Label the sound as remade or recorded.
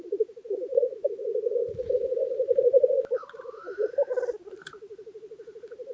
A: recorded